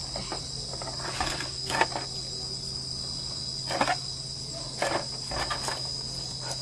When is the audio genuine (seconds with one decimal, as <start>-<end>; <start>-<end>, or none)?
0.0-6.6